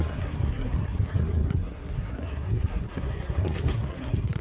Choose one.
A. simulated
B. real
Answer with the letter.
A